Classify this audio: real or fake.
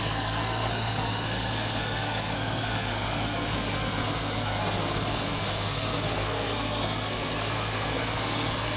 fake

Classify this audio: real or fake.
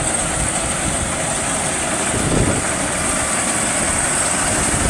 real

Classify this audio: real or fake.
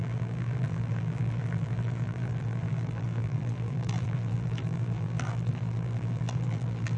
fake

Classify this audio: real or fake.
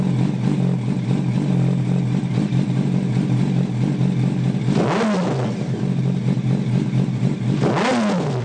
real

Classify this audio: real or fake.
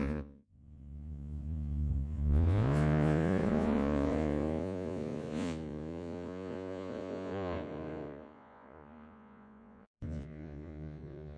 fake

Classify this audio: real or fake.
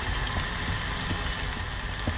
real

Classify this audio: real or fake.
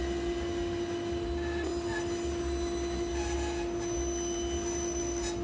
real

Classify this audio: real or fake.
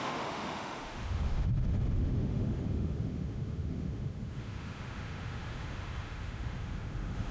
fake